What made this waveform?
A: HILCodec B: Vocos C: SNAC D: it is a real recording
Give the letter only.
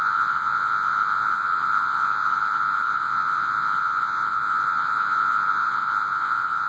B